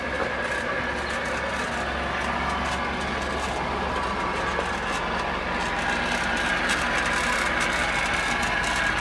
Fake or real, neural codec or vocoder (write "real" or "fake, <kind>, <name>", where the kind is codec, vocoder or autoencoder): real